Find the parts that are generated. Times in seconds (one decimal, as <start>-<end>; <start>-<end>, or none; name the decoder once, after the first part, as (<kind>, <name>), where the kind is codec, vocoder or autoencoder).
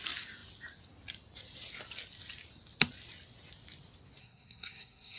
4.2-5.2 (codec, SNAC)